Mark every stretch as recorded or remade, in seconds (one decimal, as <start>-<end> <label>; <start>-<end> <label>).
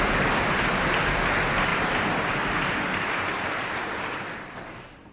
0.0-1.7 recorded; 1.7-4.0 remade; 4.0-5.1 recorded